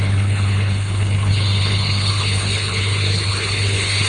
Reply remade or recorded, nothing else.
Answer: remade